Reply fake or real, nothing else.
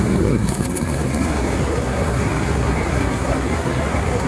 fake